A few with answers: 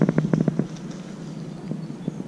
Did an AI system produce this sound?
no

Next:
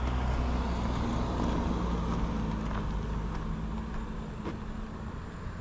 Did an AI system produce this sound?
no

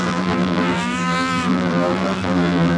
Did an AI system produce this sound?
yes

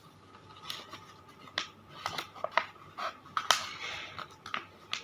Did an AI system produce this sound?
no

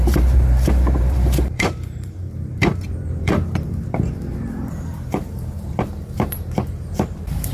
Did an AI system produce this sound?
yes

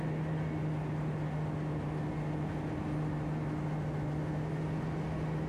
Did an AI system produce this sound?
no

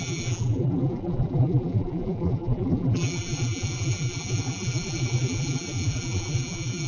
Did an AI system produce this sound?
yes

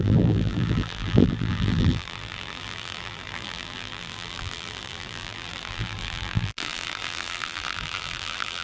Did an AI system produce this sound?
yes